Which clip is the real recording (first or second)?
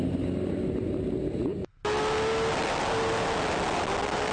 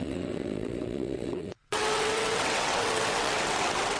first